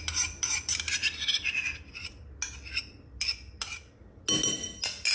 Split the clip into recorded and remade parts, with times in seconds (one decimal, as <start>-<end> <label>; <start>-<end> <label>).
0.0-5.1 recorded